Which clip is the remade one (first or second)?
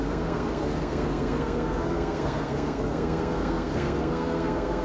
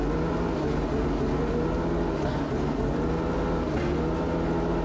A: first